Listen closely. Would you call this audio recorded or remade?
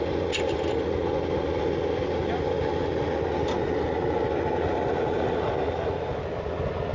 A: recorded